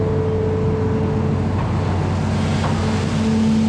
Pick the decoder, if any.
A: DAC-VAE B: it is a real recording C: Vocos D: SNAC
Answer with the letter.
B